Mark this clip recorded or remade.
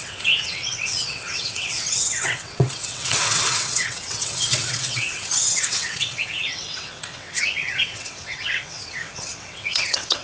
remade